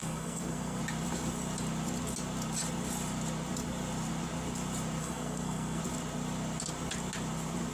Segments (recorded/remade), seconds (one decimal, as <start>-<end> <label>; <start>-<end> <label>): 0.0-0.8 remade; 0.8-5.0 recorded; 5.0-5.8 remade; 5.8-7.7 recorded